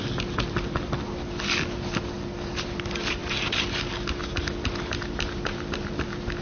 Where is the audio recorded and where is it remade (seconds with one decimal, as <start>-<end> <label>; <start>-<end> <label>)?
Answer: 0.0-6.4 recorded

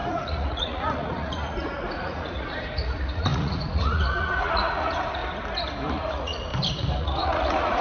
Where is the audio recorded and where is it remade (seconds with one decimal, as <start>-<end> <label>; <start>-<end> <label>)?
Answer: 0.0-5.2 remade; 5.2-5.9 recorded; 5.9-6.5 remade; 6.5-7.0 recorded; 7.0-7.8 remade

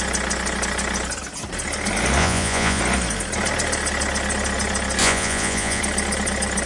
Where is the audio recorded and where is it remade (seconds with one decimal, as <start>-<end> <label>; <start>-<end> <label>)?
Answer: 0.0-2.2 recorded; 2.2-2.8 remade; 2.8-5.0 recorded; 5.0-5.8 remade; 5.8-6.7 recorded

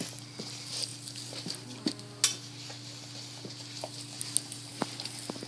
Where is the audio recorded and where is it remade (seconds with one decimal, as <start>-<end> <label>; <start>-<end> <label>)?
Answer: 0.0-5.5 recorded

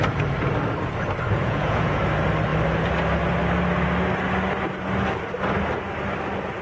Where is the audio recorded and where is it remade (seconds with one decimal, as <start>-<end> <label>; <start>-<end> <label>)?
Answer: 0.0-1.3 recorded; 1.3-2.0 remade; 2.0-6.6 recorded

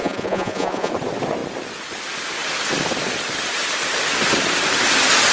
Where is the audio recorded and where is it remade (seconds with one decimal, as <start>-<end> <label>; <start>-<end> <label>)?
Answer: 0.0-0.9 remade; 0.9-5.3 recorded